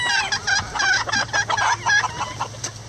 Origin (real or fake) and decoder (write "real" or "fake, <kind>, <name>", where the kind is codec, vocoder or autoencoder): real